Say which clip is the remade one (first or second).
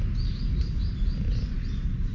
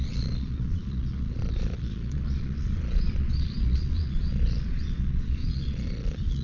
second